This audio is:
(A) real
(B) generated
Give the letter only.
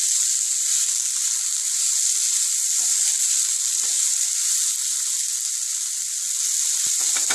A